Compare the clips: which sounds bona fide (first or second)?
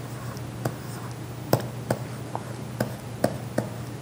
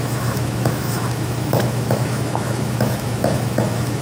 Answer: first